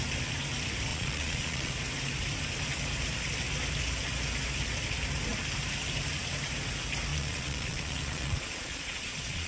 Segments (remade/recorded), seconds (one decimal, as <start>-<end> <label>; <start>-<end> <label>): 0.0-0.9 recorded; 0.9-1.7 remade; 1.7-7.1 recorded; 7.1-9.5 remade